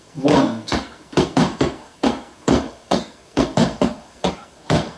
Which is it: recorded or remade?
remade